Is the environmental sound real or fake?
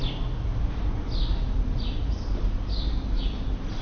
real